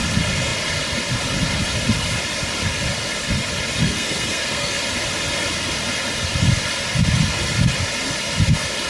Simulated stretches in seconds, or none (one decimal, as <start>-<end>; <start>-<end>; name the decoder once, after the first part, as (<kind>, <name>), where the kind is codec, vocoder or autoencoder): 3.8-4.8 (codec, SNAC)